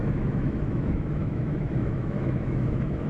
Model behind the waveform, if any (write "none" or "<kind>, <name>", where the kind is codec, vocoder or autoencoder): autoencoder, DAC-VAE